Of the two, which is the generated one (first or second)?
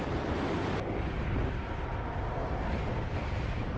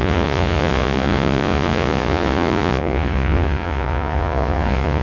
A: second